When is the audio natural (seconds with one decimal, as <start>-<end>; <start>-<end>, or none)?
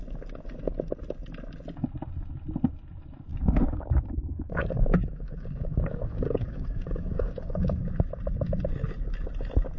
0.0-3.3; 7.9-9.8